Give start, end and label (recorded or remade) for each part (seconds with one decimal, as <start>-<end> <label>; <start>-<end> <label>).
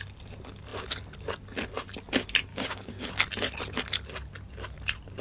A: 0.0-2.5 recorded; 2.5-3.1 remade; 3.1-5.2 recorded